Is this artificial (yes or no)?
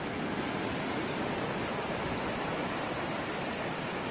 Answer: no